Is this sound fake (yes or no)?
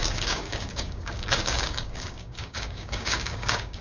yes